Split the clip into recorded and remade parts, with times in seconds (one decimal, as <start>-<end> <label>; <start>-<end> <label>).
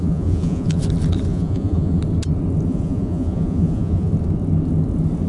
0.0-0.8 remade; 0.8-1.3 recorded; 1.3-2.0 remade; 2.0-2.7 recorded; 2.7-4.1 remade; 4.1-5.3 recorded